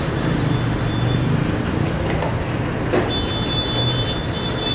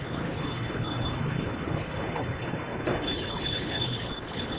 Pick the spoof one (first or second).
second